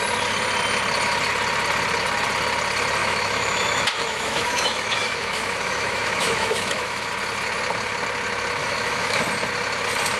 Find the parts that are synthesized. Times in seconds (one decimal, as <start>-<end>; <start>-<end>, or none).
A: 3.0-7.1; 8.6-9.2